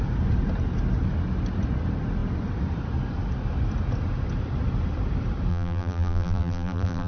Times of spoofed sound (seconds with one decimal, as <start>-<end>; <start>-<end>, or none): 5.5-7.1